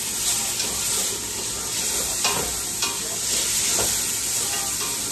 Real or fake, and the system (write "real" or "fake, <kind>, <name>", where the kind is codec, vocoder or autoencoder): real